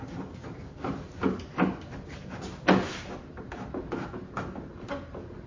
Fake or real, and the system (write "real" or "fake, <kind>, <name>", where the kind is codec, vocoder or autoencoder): real